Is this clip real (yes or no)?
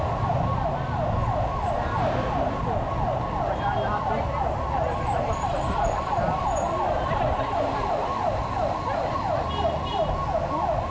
yes